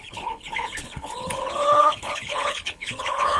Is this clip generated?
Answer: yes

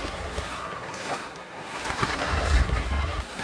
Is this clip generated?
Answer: yes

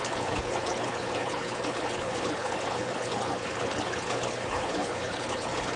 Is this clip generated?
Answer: yes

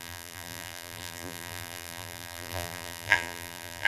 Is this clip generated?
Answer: yes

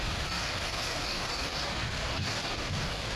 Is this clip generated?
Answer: yes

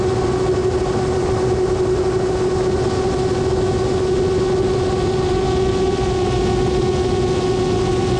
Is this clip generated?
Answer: no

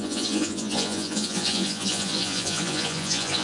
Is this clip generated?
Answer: yes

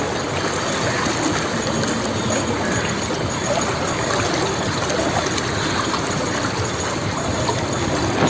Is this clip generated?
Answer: no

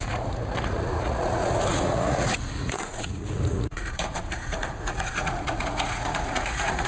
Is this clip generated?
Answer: yes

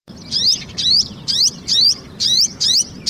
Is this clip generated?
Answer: yes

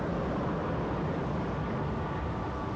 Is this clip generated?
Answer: no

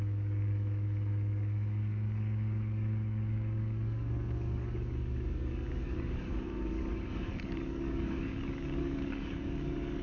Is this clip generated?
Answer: yes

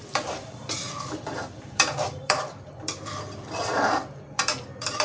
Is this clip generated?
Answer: yes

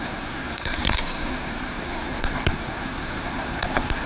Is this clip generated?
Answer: yes